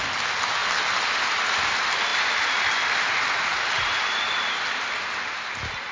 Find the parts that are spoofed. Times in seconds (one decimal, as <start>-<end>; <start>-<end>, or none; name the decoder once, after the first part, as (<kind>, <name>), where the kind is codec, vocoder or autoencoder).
none